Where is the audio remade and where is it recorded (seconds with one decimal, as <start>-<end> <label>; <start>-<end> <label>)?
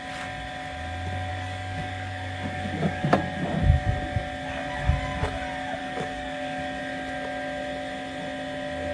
0.0-1.3 recorded; 1.3-3.2 remade; 3.2-5.8 recorded; 5.8-6.8 remade; 6.8-8.9 recorded